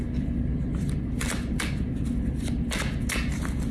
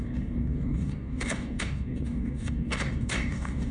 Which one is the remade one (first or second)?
second